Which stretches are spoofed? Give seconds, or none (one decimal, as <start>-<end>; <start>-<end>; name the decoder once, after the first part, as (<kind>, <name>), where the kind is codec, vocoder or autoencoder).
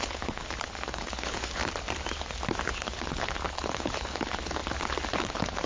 0.0-1.6 (codec, HILCodec); 2.7-4.6; 5.2-5.7